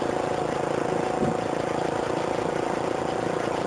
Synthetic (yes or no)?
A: no